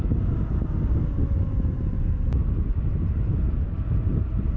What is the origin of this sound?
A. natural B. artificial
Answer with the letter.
A